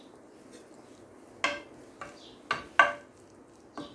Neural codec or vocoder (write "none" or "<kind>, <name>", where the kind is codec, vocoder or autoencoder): none